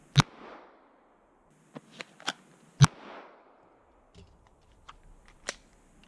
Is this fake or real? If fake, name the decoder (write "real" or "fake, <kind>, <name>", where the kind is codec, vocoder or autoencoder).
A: real